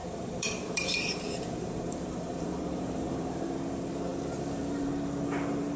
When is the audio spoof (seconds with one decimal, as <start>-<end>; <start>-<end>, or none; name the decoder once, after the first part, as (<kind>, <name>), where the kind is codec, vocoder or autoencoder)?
0.0-3.5 (vocoder, BigVGAN v2); 4.1-4.9